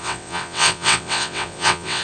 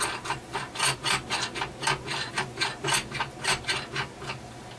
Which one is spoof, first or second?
first